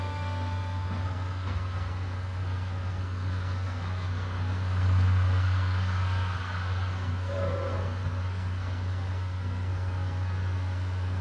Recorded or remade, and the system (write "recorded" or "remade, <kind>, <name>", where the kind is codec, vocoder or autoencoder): remade, codec, SNAC